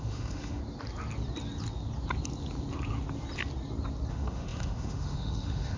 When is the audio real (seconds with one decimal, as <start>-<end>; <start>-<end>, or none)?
0.6-4.1